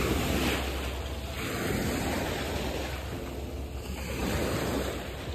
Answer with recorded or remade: recorded